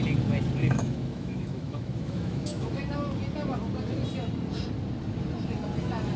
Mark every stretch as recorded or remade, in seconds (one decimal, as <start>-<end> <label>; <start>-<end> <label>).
0.0-0.6 recorded; 0.6-2.8 remade; 2.8-6.2 recorded